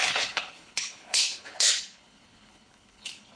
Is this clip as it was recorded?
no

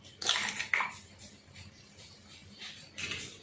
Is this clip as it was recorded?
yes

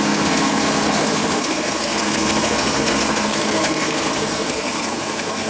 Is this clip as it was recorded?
no